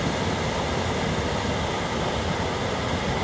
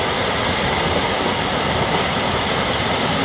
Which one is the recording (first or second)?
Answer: first